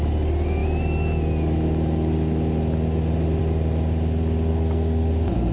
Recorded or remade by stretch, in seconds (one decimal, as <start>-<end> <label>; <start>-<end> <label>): 0.0-4.5 recorded; 4.5-5.1 remade; 5.1-5.5 recorded